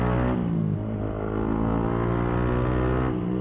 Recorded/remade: recorded